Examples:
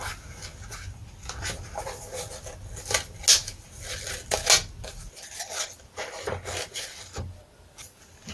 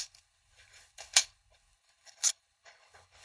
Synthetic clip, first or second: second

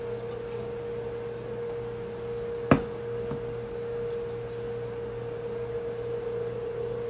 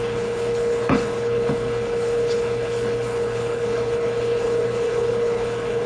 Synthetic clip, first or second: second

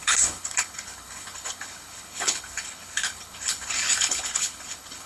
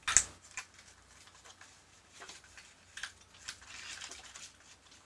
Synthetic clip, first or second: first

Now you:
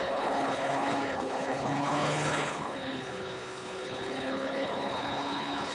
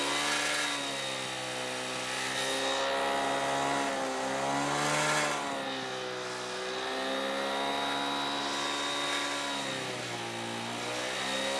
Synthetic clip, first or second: first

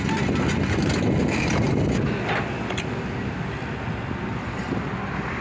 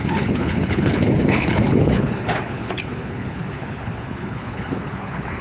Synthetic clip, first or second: second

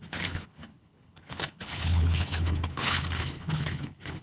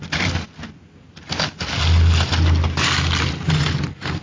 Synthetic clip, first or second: first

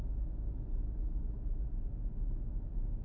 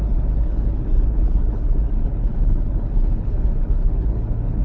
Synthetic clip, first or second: second